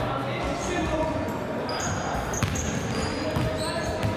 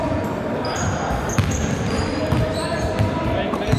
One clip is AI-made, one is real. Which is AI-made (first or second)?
second